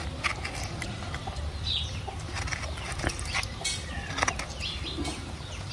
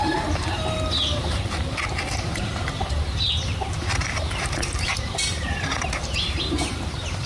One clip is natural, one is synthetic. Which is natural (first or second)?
first